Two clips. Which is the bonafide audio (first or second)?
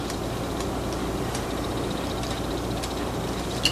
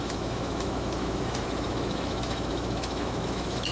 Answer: first